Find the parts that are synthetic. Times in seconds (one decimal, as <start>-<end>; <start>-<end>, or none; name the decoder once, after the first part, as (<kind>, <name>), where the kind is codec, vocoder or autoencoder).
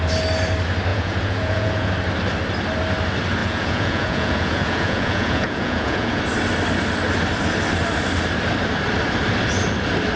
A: 0.9-1.9 (vocoder, Vocos); 3.4-6.2